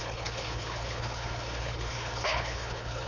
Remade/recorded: remade